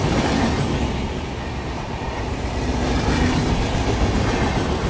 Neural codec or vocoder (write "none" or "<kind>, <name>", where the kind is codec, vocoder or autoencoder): none